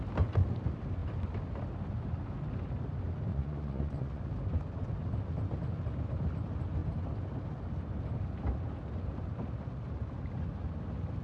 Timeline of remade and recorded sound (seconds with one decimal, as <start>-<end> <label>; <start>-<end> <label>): 0.0-3.3 recorded; 3.3-4.2 remade; 4.2-11.2 recorded